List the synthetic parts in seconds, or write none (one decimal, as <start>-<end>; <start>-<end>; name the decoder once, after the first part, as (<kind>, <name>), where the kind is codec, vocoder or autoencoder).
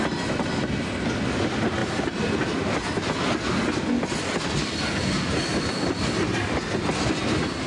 none